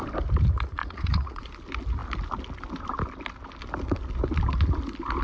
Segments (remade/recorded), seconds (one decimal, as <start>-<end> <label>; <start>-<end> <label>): 0.0-0.8 recorded; 0.8-1.4 remade; 1.4-5.2 recorded